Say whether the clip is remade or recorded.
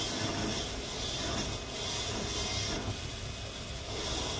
recorded